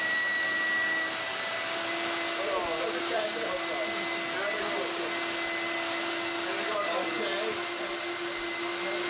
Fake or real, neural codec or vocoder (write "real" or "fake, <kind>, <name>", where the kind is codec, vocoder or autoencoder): real